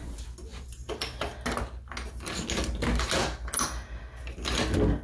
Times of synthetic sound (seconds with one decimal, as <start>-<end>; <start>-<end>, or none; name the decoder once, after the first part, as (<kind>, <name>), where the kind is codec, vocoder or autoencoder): none